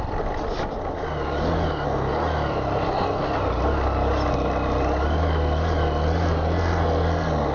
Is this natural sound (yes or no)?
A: yes